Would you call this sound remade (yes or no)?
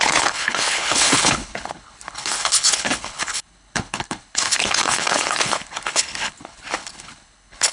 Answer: yes